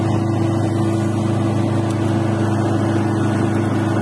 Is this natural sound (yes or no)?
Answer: yes